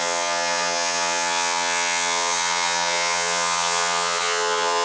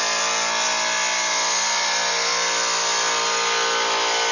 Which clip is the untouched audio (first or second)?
second